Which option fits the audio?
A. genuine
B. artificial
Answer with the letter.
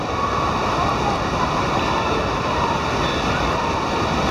A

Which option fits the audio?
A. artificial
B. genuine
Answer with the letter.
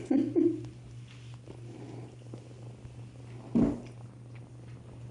B